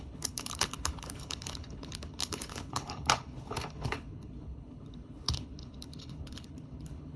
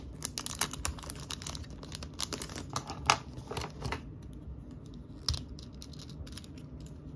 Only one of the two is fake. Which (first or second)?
first